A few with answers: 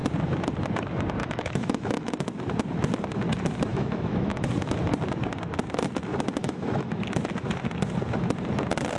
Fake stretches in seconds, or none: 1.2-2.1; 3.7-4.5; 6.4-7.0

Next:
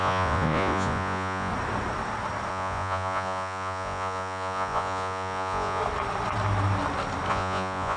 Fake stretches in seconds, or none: 0.0-1.5; 2.5-5.8; 7.3-8.0

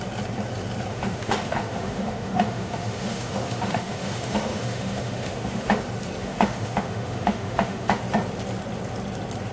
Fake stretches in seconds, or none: 0.9-5.8; 6.2-8.0

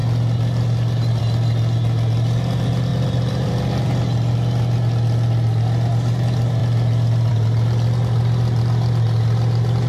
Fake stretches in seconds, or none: 2.9-3.5